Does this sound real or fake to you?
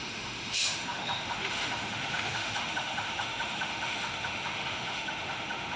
fake